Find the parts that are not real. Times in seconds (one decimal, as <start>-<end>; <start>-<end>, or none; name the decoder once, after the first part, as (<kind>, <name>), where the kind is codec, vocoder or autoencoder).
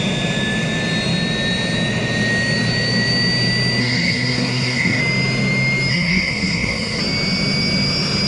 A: 3.8-5.0 (codec, SNAC); 5.9-7.0